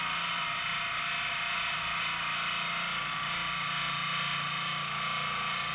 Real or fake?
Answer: real